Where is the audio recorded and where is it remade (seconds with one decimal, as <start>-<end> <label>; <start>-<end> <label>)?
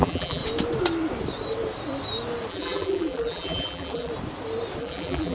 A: 0.0-0.4 remade; 0.4-2.5 recorded; 2.5-4.1 remade; 4.1-4.8 recorded; 4.8-5.3 remade